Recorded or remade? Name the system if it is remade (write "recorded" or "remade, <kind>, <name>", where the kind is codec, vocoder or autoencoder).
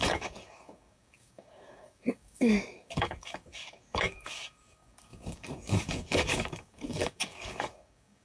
remade, codec, DAC